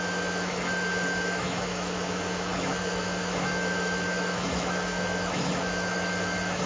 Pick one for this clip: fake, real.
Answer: fake